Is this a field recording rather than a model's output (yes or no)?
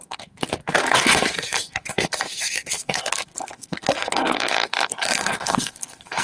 no